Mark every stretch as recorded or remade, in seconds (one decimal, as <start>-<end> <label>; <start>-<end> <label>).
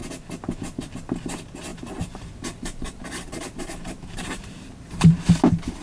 0.0-1.7 recorded; 1.7-5.2 remade; 5.2-5.8 recorded